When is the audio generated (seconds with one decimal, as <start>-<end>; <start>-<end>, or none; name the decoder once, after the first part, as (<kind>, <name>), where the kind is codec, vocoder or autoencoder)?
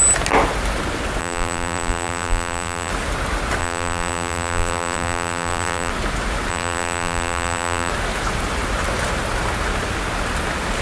1.2-2.9 (vocoder, BigVGAN v2); 3.6-5.9; 6.5-7.9